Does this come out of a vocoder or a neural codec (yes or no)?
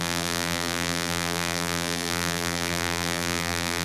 yes